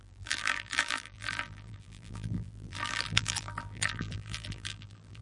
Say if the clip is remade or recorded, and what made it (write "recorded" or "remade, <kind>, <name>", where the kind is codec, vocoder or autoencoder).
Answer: remade, vocoder, BigVGAN v2